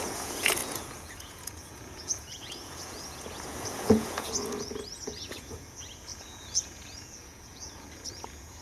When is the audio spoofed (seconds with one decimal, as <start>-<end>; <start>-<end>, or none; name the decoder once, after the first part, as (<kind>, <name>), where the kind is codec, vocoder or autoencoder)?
0.0-8.6 (vocoder, Vocos)